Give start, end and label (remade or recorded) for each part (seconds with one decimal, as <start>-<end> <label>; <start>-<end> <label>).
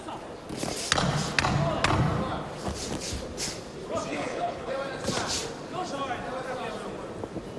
0.0-4.1 recorded; 4.1-4.7 remade; 4.7-7.6 recorded